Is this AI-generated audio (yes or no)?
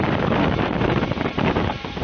yes